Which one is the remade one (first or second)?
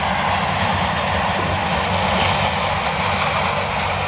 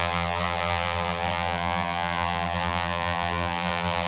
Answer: second